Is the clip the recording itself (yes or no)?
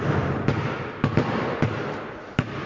yes